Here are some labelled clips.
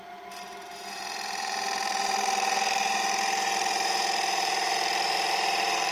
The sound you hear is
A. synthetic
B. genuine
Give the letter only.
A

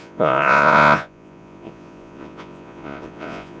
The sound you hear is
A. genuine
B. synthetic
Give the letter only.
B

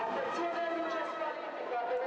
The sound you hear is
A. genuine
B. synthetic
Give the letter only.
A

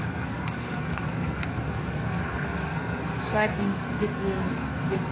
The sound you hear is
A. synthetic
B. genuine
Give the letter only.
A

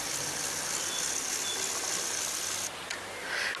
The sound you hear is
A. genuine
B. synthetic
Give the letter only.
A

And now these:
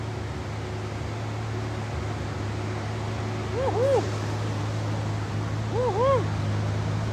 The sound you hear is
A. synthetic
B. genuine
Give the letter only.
B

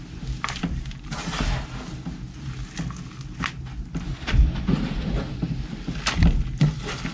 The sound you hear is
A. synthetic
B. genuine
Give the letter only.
B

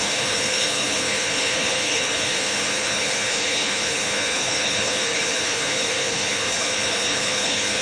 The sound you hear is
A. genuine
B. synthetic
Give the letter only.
B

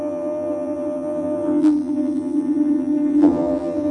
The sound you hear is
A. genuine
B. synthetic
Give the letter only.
B